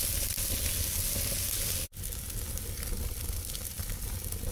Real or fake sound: real